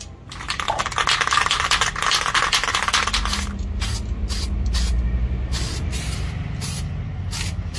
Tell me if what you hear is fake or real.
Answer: real